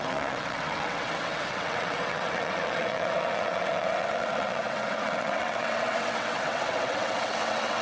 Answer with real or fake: fake